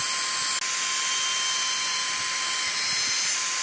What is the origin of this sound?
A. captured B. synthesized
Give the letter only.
A